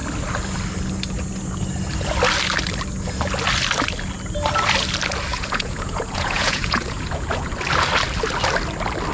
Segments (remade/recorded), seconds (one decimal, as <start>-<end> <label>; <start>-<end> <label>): 0.0-5.3 recorded; 5.3-7.5 remade; 7.5-9.1 recorded